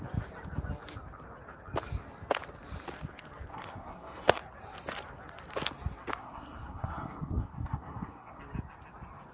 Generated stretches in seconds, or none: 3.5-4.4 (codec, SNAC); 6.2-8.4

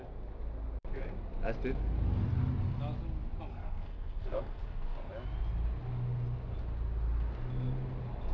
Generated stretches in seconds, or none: 3.5-5.1 (codec, SNAC)

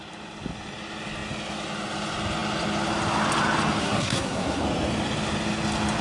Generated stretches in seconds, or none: 3.8-4.6 (codec, SNAC)